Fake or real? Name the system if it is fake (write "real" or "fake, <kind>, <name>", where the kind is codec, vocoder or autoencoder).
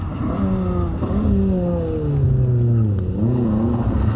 real